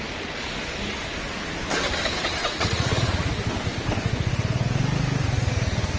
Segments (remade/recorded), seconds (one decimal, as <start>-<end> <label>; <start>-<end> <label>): 0.0-2.4 recorded; 2.4-3.3 remade; 3.3-6.0 recorded